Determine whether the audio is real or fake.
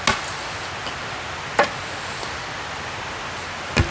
real